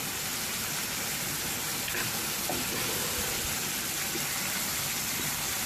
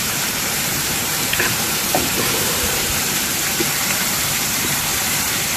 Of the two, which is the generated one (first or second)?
second